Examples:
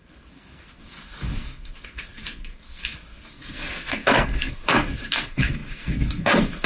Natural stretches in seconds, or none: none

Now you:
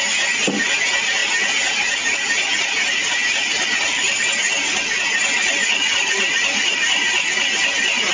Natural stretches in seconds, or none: 0.0-8.1

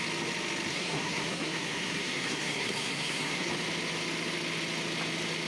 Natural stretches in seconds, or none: 0.0-0.7; 3.5-5.5

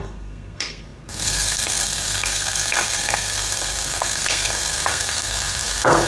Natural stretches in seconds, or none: none

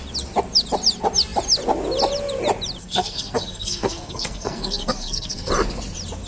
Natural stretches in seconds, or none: 0.0-2.8; 5.5-6.3

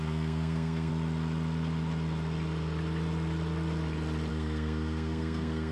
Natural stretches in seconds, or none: 0.9-4.3

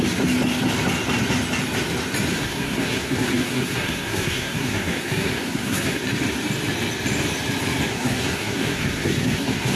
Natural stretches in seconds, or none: 0.0-2.3; 6.0-7.9